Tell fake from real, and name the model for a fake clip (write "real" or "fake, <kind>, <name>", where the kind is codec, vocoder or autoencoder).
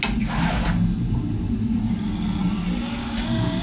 real